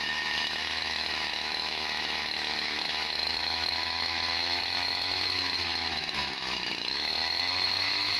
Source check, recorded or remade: remade